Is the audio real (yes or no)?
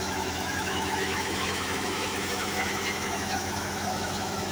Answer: no